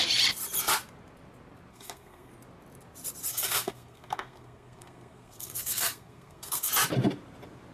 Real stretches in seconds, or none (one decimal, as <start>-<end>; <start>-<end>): 0.0-1.7; 2.3-3.3; 6.7-7.7